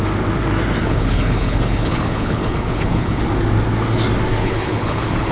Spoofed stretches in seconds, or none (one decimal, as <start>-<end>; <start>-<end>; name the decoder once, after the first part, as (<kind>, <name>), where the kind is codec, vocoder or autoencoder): 0.8-3.2 (codec, HILCodec); 4.4-5.3